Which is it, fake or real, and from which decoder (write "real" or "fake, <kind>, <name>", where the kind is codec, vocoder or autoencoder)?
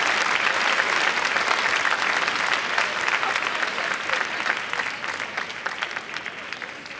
real